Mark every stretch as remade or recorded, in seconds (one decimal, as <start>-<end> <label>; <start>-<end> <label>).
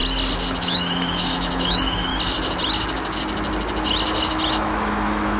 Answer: 0.0-0.6 recorded; 0.6-2.1 remade; 2.1-4.5 recorded; 4.5-5.4 remade